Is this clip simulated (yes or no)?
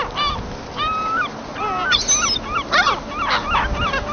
no